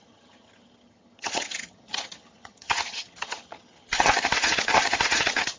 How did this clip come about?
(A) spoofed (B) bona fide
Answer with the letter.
A